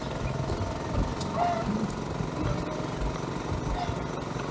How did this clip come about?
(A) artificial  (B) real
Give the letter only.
B